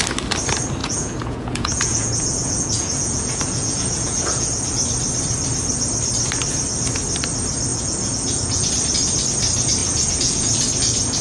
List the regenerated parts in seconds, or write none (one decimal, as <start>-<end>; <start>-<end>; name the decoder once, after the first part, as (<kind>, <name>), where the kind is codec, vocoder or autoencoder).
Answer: 0.8-4.7 (vocoder, Vocos); 7.7-8.7; 9.8-10.6